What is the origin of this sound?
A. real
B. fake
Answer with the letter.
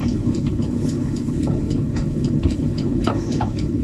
B